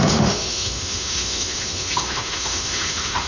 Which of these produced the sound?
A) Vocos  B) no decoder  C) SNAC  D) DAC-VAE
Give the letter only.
D